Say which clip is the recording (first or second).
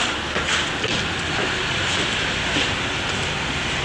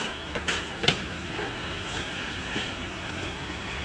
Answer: first